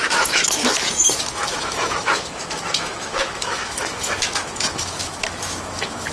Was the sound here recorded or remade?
remade